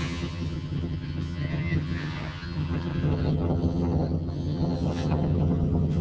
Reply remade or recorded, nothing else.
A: remade